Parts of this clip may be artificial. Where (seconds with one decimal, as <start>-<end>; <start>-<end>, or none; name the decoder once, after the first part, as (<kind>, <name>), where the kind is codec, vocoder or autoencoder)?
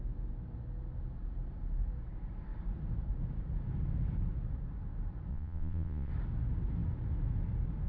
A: 5.3-6.1 (vocoder, Vocos)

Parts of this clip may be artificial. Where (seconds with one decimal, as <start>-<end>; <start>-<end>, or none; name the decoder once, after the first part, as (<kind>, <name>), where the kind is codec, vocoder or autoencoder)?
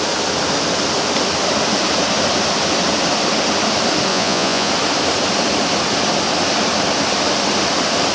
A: 4.1-4.7 (vocoder, Vocos)